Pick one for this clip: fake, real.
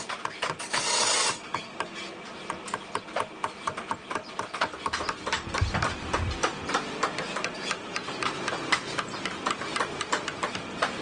real